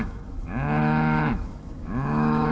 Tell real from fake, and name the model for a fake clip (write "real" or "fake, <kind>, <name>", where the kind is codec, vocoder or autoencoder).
fake, autoencoder, DAC-VAE